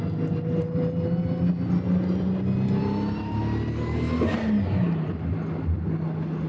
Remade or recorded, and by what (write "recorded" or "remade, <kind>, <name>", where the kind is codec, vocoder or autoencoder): recorded